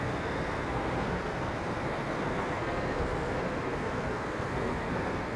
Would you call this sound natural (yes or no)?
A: no